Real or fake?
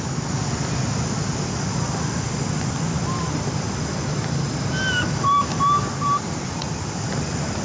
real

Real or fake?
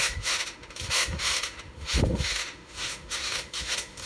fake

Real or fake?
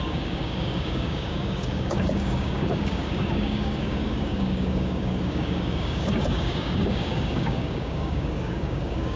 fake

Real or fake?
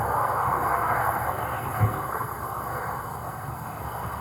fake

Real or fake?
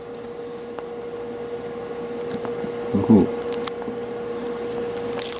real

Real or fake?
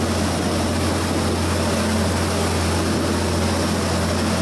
real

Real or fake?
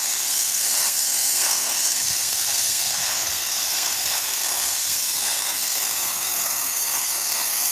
fake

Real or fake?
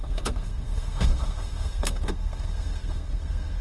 fake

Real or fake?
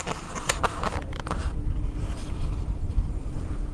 fake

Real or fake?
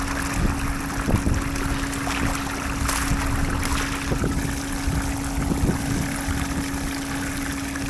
real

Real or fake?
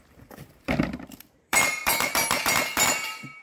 fake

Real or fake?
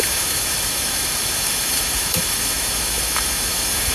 fake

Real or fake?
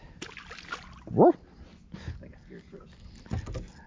real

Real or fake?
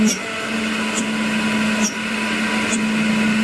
real